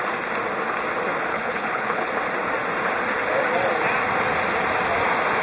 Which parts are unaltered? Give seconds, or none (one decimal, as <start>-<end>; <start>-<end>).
0.0-1.3; 2.1-5.4